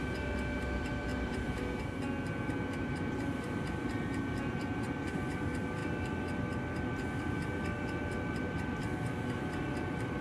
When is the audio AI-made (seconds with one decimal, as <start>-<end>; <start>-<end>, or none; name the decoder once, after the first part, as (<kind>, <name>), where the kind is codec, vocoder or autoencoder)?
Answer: 0.0-5.8 (vocoder, BigVGAN v2); 7.2-10.2